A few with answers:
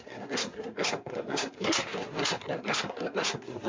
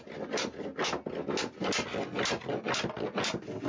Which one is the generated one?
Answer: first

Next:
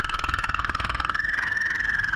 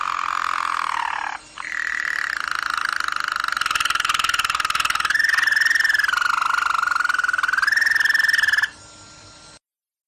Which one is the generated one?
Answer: first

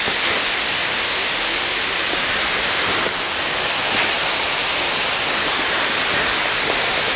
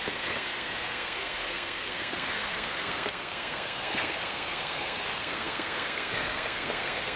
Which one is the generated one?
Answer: second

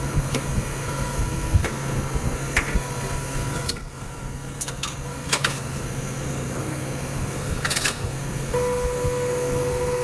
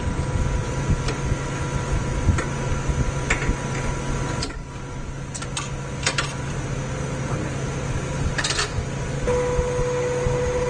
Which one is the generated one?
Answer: first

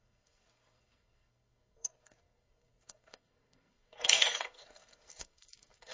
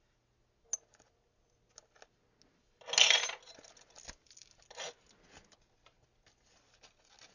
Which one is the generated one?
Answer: first